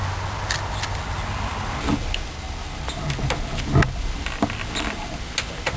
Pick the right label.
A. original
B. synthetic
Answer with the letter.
A